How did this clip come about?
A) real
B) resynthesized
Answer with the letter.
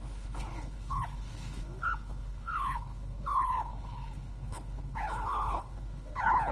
B